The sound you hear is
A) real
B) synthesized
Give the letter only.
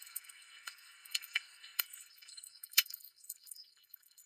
B